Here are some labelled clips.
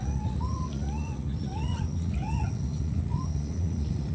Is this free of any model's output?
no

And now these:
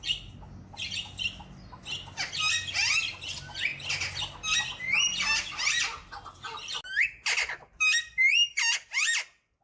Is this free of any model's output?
yes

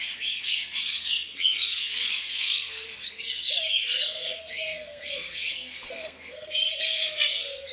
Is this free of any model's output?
no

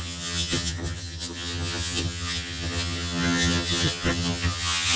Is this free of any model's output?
no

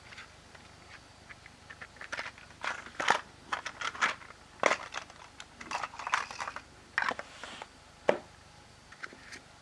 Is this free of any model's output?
yes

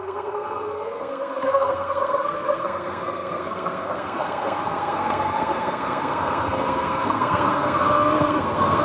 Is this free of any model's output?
no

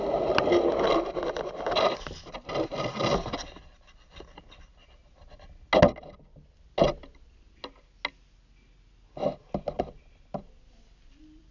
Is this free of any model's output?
yes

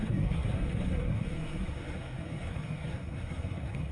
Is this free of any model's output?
no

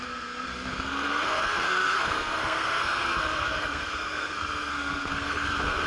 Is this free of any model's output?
no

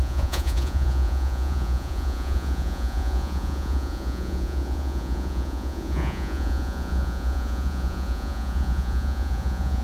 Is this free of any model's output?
no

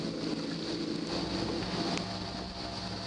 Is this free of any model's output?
yes